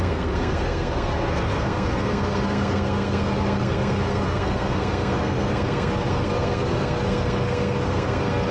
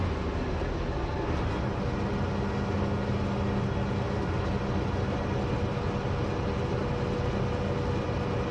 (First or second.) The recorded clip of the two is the second